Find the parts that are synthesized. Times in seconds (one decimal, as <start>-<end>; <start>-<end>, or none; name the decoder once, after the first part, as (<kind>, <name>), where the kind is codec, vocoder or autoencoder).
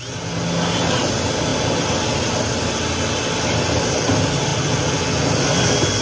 none